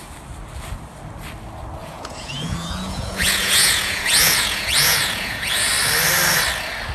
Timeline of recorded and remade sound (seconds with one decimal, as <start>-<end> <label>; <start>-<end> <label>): 0.0-1.8 recorded; 1.8-5.7 remade; 5.7-6.9 recorded